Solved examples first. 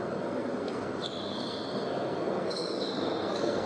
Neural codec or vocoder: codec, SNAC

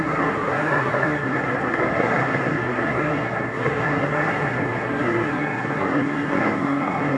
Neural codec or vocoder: codec, SNAC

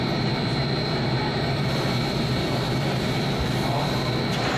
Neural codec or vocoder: none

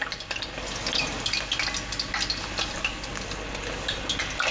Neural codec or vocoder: none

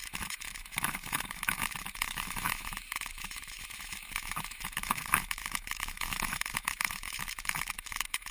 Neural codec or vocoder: autoencoder, DAC-VAE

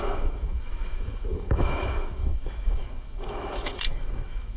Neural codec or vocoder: autoencoder, DAC-VAE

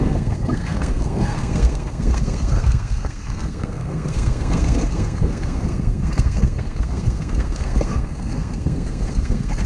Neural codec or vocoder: codec, SNAC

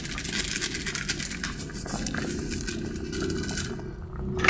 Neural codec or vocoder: none